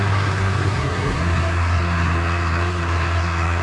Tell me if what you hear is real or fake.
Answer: fake